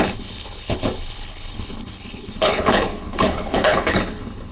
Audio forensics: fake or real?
fake